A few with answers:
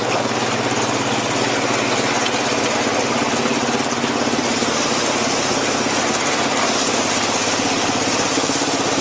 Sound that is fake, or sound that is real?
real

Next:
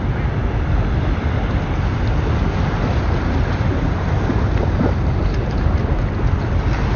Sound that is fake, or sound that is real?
real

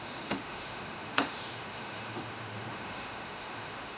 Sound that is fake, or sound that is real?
fake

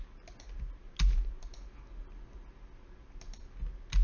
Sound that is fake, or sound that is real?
real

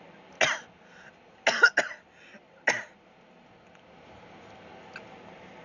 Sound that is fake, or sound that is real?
real